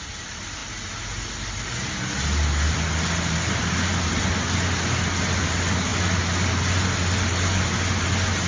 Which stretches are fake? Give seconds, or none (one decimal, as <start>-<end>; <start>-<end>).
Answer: none